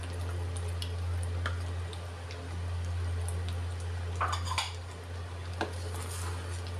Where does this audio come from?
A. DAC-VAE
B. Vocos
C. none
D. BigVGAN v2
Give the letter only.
C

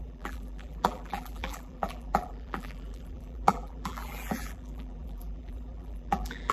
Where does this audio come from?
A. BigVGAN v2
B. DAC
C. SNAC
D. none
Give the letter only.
A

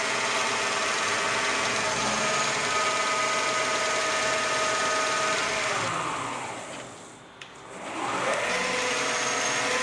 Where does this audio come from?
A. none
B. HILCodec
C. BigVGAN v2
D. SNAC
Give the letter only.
A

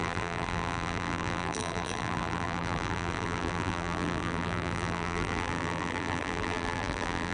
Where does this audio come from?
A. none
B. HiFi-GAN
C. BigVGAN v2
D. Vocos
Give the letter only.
C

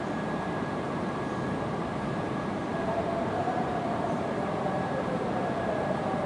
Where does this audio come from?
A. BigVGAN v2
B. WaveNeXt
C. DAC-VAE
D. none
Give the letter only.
A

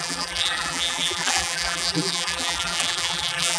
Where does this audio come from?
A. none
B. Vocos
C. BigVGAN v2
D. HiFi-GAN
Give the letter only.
C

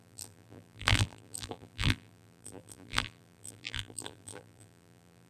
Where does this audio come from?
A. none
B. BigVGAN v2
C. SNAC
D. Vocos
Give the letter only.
B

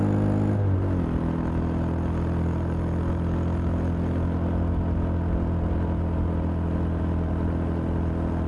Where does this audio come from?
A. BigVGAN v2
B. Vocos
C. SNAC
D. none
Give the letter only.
D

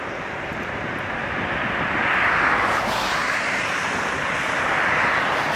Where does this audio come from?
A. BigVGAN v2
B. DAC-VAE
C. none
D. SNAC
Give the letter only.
C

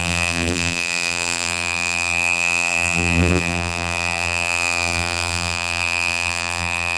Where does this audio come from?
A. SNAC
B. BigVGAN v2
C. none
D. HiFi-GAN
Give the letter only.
B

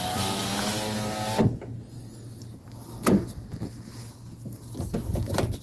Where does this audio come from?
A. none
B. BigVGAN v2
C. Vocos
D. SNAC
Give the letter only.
A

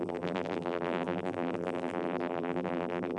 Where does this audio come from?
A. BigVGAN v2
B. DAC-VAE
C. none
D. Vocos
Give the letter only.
A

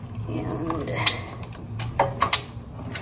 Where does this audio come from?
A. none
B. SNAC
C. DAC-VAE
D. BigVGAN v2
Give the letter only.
A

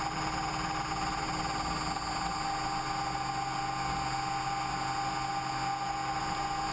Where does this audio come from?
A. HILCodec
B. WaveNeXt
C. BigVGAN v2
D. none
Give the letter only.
D